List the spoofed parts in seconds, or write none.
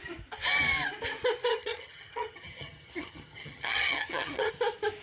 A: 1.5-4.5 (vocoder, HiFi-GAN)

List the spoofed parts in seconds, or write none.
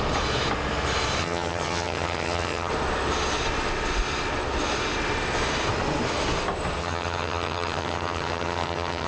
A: 1.2-2.7 (vocoder, HiFi-GAN); 6.8-9.1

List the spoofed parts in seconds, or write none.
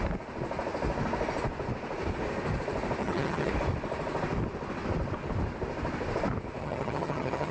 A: 3.0-3.5 (vocoder, HiFi-GAN); 6.6-7.5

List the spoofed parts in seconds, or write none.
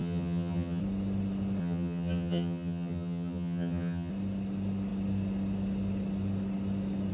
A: 0.0-0.8 (vocoder, HiFi-GAN); 1.6-4.1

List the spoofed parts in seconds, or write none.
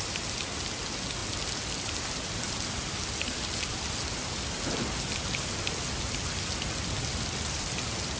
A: none